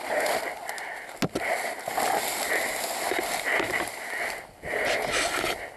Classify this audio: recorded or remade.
recorded